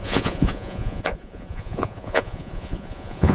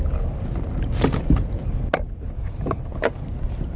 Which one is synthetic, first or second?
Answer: first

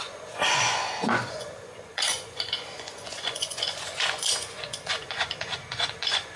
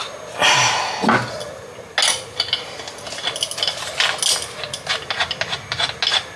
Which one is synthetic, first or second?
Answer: first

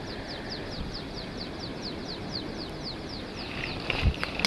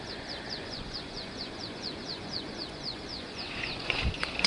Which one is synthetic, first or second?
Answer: second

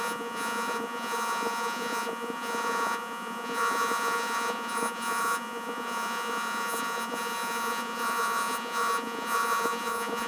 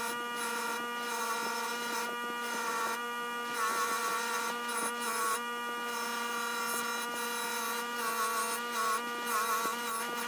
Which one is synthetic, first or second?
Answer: first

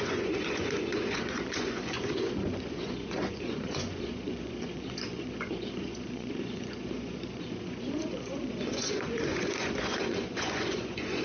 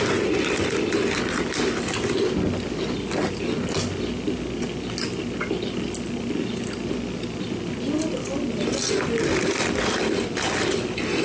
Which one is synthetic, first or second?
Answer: first